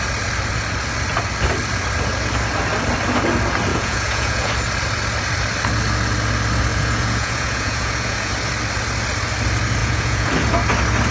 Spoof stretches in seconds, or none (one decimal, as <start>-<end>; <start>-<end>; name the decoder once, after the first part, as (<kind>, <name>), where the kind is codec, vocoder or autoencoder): 3.7-4.5 (vocoder, Vocos); 6.7-8.3; 9.8-10.3